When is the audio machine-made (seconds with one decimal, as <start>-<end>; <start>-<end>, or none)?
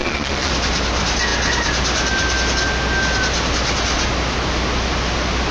0.0-0.5